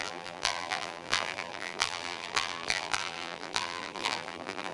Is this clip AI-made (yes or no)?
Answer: yes